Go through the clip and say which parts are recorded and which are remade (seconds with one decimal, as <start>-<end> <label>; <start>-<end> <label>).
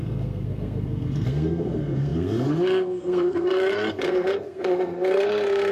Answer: 0.0-5.7 remade